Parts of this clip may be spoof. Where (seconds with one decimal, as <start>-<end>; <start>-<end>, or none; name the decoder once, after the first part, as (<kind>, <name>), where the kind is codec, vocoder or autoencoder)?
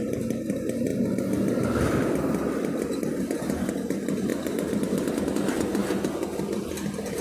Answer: 4.3-4.8 (vocoder, BigVGAN v2)